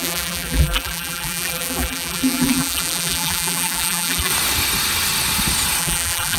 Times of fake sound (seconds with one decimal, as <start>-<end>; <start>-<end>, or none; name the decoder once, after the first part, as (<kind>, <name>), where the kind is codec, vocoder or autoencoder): 0.0-4.3 (vocoder, BigVGAN v2); 5.8-6.4